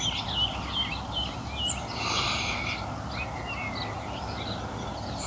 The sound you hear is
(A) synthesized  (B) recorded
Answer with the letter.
B